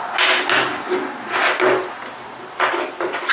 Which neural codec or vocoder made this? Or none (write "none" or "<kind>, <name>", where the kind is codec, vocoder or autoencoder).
none